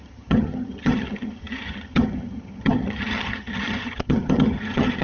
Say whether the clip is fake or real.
fake